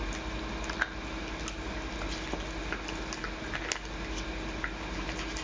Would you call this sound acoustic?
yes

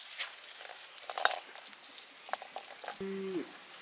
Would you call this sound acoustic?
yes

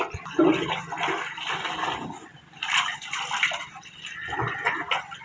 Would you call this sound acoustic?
yes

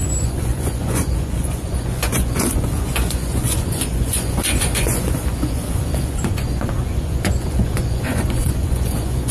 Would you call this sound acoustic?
no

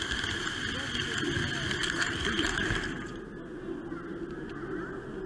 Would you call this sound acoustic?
yes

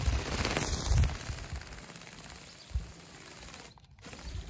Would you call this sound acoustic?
yes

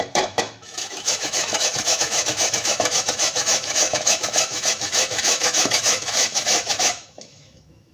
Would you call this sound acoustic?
no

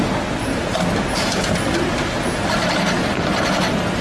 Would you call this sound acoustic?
yes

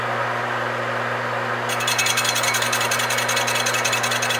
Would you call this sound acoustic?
yes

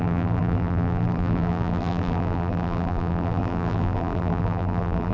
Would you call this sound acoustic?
no